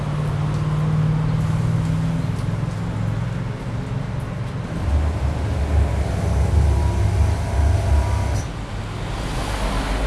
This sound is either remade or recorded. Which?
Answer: recorded